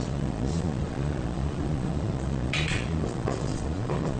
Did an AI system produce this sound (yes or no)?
yes